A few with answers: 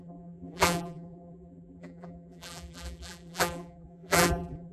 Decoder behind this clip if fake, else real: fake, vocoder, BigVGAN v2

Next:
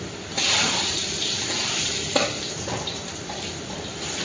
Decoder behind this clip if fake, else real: fake, vocoder, BigVGAN v2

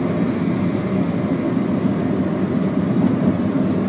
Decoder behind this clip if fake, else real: real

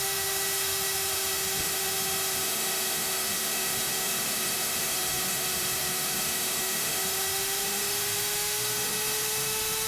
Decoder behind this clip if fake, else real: fake, autoencoder, DAC-VAE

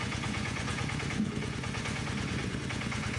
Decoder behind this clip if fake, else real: fake, vocoder, Vocos